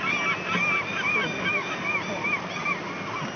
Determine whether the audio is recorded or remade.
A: recorded